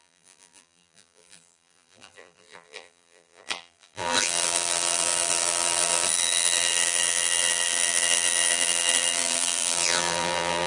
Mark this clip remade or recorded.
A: remade